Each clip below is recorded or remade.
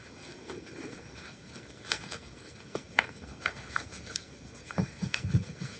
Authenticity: remade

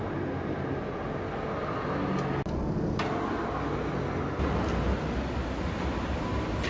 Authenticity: recorded